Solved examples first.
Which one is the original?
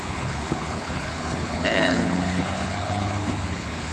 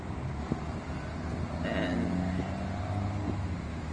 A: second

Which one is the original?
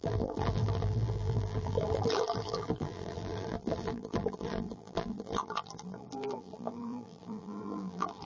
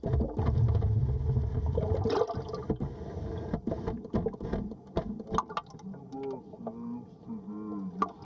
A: second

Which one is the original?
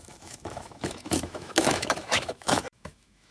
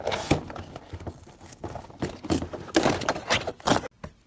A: second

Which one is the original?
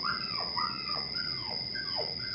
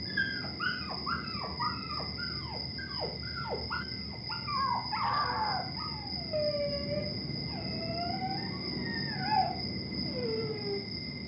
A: second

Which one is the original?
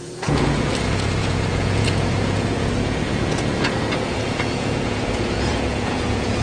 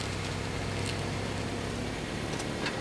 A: second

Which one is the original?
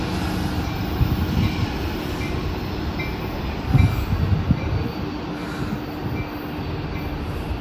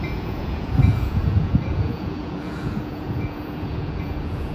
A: first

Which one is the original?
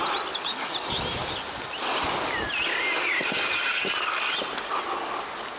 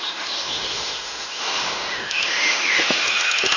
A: first